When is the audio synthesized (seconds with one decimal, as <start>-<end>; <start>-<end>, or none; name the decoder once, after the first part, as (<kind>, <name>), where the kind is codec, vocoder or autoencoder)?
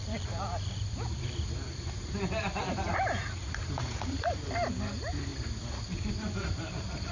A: 0.0-4.3 (vocoder, BigVGAN v2)